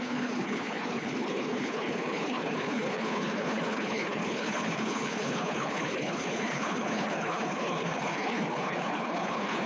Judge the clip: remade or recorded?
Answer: remade